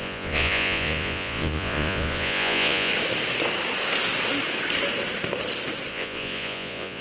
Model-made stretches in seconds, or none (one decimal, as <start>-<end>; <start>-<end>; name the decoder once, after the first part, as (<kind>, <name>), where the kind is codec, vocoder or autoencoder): 0.0-2.9 (vocoder, Vocos); 5.9-7.0